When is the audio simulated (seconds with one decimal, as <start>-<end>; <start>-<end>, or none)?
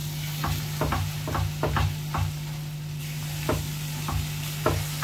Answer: none